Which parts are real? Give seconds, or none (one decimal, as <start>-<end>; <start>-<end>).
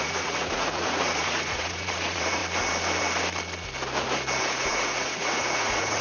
2.4-4.4